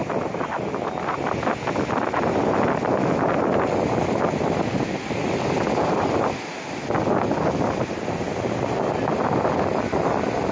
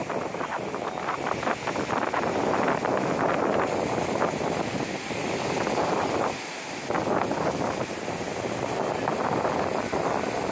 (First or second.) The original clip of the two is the first